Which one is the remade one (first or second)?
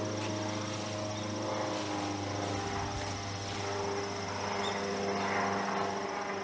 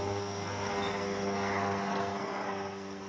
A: second